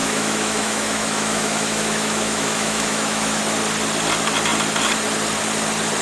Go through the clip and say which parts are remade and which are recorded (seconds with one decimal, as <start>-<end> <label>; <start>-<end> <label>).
0.0-3.4 remade; 3.4-6.0 recorded

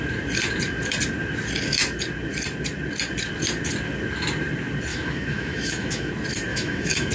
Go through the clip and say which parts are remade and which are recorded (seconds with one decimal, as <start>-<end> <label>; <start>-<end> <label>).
0.0-4.9 recorded; 4.9-6.1 remade; 6.1-6.5 recorded; 6.5-7.1 remade

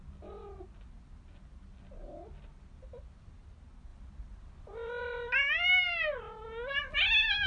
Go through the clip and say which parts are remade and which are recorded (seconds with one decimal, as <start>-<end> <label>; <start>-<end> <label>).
0.0-7.5 recorded